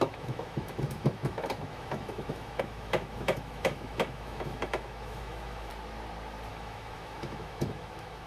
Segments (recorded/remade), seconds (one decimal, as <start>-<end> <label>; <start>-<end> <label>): 0.0-5.7 remade; 5.7-6.5 recorded; 6.5-8.3 remade